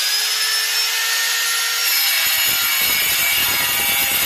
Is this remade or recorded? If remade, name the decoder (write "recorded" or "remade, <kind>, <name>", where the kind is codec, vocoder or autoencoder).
recorded